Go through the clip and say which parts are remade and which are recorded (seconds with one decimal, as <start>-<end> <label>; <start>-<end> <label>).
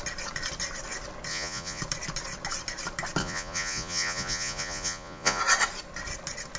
0.0-1.3 recorded; 1.3-1.8 remade; 1.8-3.2 recorded; 3.2-5.4 remade; 5.4-6.6 recorded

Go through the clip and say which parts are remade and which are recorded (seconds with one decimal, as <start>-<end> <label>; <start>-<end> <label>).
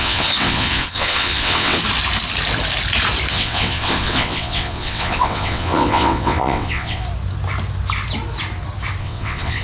0.0-1.8 remade; 1.8-3.3 recorded; 3.3-7.0 remade; 7.0-9.0 recorded; 9.0-9.6 remade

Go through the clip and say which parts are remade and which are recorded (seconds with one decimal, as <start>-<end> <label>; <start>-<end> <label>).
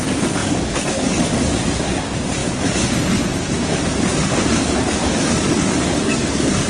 0.0-6.7 remade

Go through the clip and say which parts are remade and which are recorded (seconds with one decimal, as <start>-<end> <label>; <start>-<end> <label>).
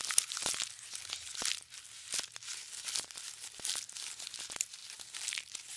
0.0-2.5 recorded; 2.5-3.4 remade; 3.4-5.8 recorded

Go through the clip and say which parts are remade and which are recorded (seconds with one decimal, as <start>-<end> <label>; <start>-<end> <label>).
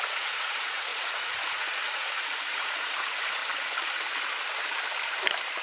0.0-3.4 remade; 3.4-5.6 recorded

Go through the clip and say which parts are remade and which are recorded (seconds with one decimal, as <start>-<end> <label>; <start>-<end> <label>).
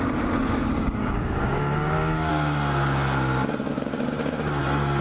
0.0-0.6 recorded; 0.6-2.3 remade; 2.3-3.7 recorded; 3.7-4.6 remade; 4.6-5.0 recorded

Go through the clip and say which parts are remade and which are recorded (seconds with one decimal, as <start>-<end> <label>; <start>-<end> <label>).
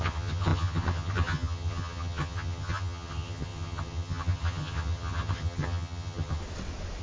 0.0-6.4 remade; 6.4-7.0 recorded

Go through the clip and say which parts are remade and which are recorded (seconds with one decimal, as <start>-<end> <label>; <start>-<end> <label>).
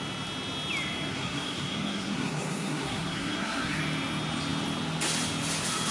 0.0-1.1 recorded; 1.1-3.8 remade; 3.8-5.9 recorded